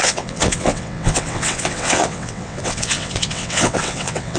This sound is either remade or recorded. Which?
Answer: remade